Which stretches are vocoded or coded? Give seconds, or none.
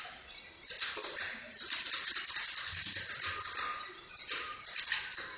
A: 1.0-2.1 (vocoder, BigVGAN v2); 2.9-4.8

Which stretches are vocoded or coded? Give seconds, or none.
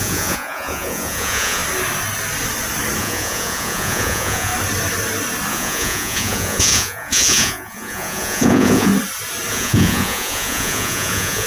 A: 0.0-1.6 (vocoder, Vocos); 3.0-4.5; 5.5-8.9; 9.5-11.5